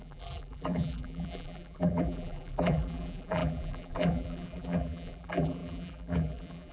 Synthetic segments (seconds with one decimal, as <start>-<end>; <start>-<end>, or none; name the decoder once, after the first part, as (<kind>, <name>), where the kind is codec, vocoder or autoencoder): 0.0-6.7 (vocoder, BigVGAN v2)